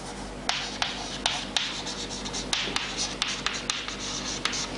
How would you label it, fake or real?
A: real